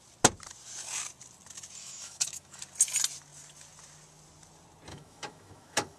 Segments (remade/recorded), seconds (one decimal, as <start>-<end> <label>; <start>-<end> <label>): 0.0-1.8 recorded; 1.8-2.6 remade; 2.6-4.9 recorded; 4.9-6.0 remade

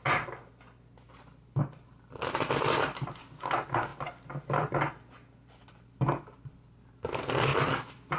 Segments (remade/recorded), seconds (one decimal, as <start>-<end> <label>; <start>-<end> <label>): 0.0-8.2 recorded